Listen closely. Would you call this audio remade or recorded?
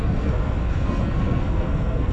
remade